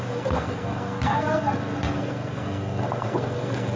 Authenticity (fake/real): fake